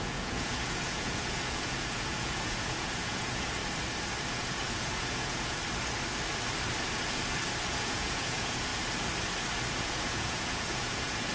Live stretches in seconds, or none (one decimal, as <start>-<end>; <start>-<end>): 3.6-4.3; 5.6-7.7; 8.7-9.7